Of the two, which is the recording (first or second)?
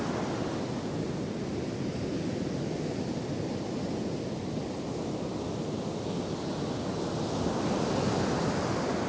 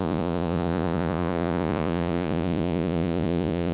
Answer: first